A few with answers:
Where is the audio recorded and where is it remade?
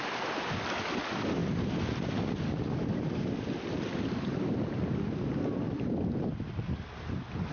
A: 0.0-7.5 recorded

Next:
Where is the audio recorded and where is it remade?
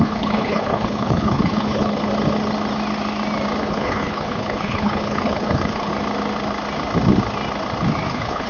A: 0.0-2.1 remade; 2.1-3.6 recorded; 3.6-5.9 remade; 5.9-8.1 recorded; 8.1-8.5 remade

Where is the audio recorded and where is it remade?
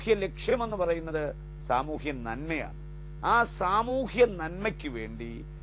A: 0.0-0.5 recorded; 0.5-1.1 remade; 1.1-5.6 recorded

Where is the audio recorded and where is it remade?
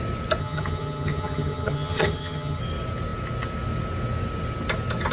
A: 0.0-0.4 recorded; 0.4-2.6 remade; 2.6-5.1 recorded